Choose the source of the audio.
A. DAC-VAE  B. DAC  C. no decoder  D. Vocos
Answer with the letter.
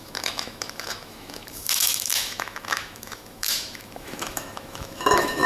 A